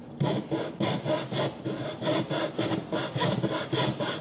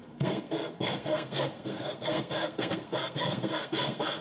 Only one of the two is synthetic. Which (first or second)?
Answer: second